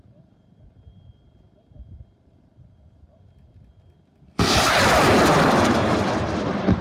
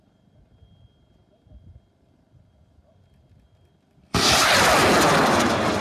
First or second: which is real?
second